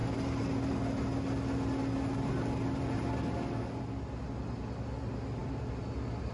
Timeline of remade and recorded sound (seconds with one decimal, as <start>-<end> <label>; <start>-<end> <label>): 0.0-6.3 recorded